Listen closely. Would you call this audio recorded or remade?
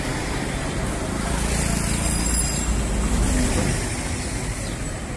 recorded